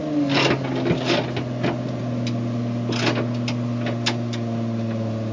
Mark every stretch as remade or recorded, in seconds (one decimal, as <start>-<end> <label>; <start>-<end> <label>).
0.0-5.3 recorded